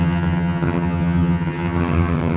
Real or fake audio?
fake